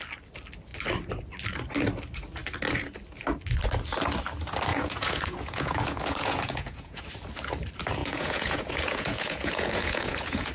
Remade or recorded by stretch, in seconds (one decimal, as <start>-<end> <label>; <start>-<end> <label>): 0.0-4.7 recorded; 4.7-7.0 remade; 7.0-8.0 recorded; 8.0-10.5 remade